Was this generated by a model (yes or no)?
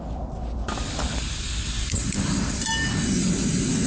no